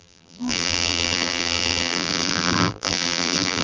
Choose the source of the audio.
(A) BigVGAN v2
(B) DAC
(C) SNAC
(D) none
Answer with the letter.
A